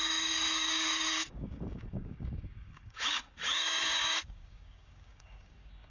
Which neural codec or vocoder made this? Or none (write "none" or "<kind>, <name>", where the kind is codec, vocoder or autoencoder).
codec, DAC